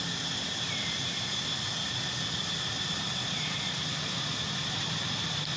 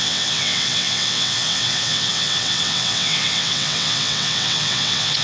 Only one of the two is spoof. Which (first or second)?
second